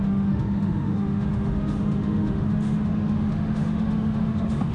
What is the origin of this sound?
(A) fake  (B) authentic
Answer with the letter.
A